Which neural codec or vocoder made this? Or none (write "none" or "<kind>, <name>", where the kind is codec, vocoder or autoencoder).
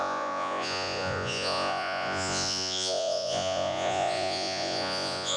vocoder, Vocos